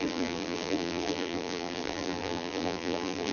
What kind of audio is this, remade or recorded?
remade